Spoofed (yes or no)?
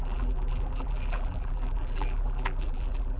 yes